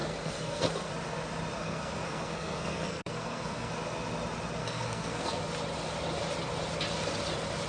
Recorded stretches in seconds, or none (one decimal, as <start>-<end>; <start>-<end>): 0.9-1.6; 3.7-4.6; 5.4-7.7